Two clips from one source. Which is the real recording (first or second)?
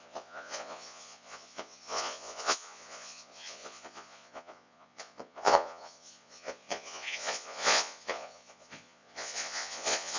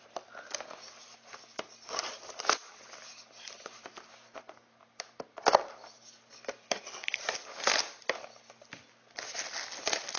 second